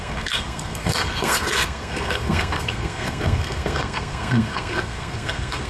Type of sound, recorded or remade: remade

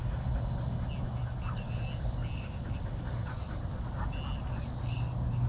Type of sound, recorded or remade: recorded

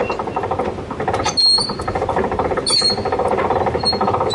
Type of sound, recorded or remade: recorded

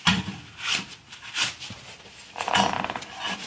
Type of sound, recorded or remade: recorded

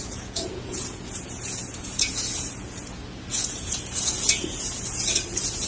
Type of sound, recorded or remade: remade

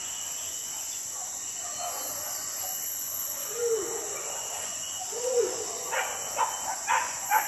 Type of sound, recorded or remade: remade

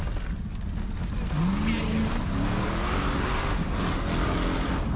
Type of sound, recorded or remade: recorded